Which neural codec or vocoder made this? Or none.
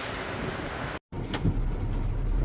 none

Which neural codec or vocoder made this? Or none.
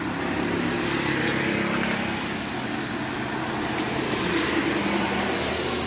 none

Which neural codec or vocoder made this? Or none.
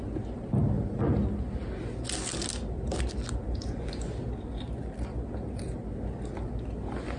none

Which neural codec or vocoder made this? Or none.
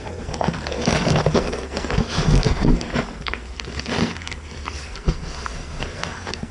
codec, SNAC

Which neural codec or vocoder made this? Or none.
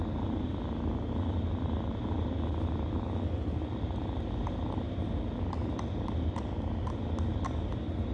none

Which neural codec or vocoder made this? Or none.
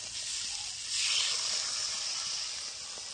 none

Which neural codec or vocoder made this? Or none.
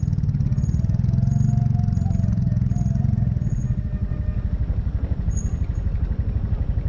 none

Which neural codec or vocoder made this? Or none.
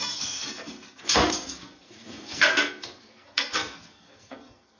codec, SNAC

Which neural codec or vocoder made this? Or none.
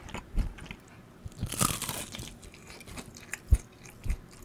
none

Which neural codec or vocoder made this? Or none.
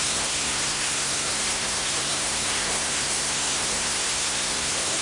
codec, SNAC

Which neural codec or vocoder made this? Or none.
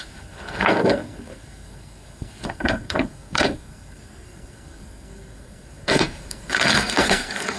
codec, SNAC